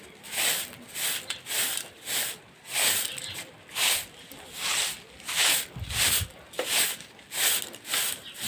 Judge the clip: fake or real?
real